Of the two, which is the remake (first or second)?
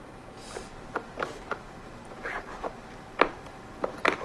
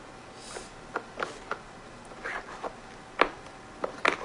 first